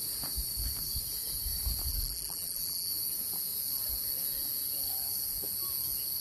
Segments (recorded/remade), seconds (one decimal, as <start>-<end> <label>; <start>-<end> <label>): 0.0-1.9 recorded; 1.9-2.9 remade; 2.9-6.2 recorded